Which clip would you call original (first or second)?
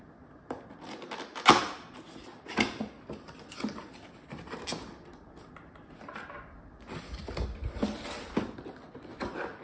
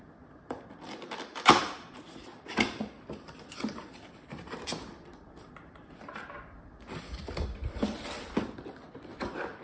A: first